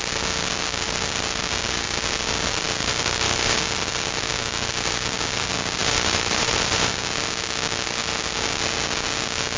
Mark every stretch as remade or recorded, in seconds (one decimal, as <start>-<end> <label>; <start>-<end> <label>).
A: 0.0-2.8 recorded; 2.8-3.6 remade; 3.6-5.8 recorded; 5.8-6.9 remade; 6.9-9.6 recorded